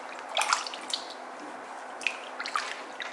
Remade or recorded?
recorded